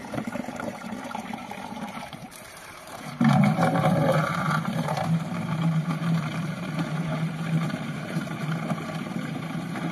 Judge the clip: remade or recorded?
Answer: remade